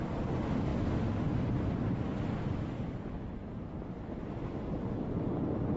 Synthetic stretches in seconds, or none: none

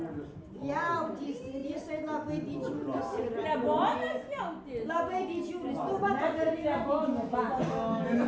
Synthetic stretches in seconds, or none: none